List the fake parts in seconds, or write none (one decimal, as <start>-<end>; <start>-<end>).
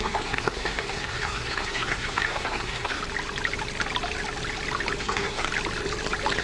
0.0-3.0; 5.0-5.5